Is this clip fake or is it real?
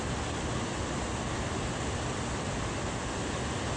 real